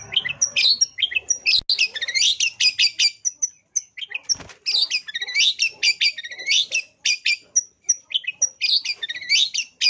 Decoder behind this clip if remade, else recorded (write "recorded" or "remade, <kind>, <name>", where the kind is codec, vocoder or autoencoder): recorded